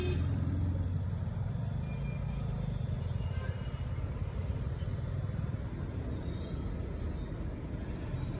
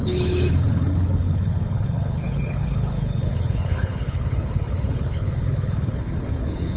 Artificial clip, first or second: second